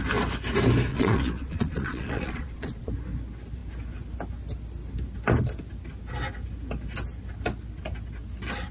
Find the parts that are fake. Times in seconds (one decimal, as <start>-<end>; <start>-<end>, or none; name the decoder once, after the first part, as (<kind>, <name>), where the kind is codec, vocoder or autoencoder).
0.9-2.9 (vocoder, Vocos)